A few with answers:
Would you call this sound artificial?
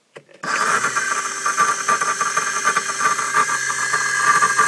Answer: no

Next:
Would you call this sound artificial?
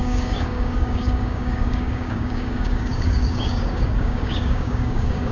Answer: yes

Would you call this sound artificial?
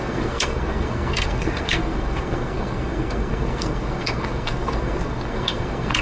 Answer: yes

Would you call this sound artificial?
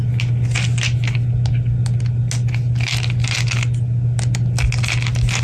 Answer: no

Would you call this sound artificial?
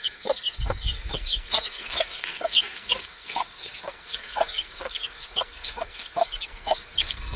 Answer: yes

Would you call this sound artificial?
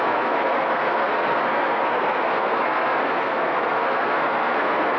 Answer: yes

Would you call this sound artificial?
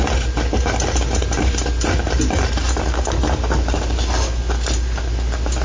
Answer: no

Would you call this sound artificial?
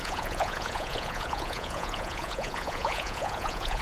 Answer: yes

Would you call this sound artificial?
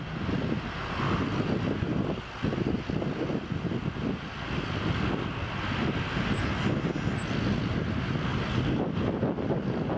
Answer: no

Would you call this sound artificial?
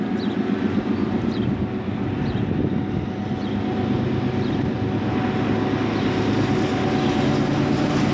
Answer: no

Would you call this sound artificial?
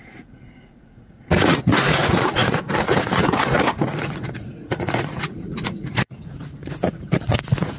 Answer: yes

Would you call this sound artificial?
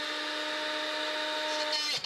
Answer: no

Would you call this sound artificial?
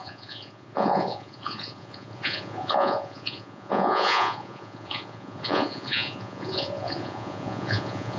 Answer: yes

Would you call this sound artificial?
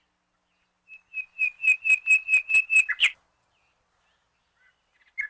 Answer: no